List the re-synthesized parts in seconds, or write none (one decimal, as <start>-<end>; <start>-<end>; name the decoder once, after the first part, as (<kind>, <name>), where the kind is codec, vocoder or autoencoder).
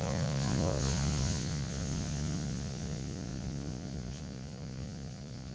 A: 0.0-5.5 (vocoder, Vocos)